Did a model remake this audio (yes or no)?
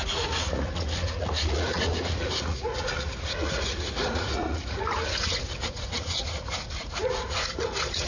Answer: yes